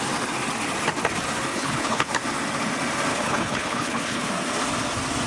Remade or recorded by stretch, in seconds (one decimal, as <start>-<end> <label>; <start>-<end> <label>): 0.0-1.5 recorded; 1.5-2.1 remade; 2.1-3.1 recorded; 3.1-4.3 remade; 4.3-5.3 recorded